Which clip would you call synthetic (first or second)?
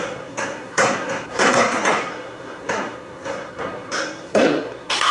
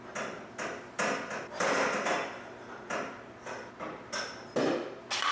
first